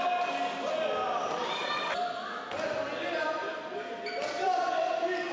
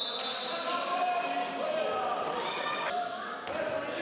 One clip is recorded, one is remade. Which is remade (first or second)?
second